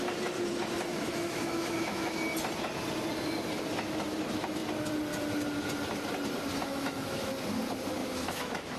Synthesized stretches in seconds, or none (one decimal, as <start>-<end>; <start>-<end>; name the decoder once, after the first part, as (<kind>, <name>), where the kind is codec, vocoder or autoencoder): 0.9-2.1 (autoencoder, DAC-VAE); 6.6-7.3; 8.0-8.8

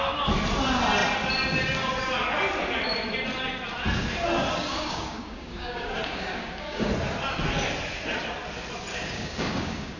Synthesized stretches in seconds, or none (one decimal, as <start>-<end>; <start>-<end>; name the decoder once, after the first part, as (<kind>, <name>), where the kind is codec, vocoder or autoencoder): 4.7-6.9 (codec, DAC); 8.9-10.0

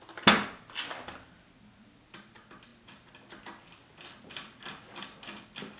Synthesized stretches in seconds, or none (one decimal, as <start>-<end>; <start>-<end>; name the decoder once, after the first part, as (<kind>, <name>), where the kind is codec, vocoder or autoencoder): none

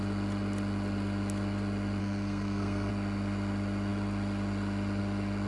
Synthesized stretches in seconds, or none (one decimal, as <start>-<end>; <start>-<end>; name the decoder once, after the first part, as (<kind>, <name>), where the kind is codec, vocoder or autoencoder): 2.0-2.9 (codec, SNAC)

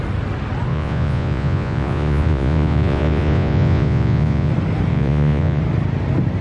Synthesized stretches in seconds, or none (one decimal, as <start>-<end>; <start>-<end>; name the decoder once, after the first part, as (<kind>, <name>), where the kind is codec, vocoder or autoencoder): 0.7-4.5 (vocoder, Vocos); 4.9-5.6

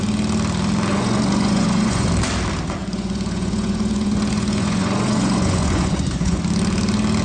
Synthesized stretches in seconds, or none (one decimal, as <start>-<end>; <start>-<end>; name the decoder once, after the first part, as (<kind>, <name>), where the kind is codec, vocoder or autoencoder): 0.9-2.1 (vocoder, Vocos); 2.8-6.4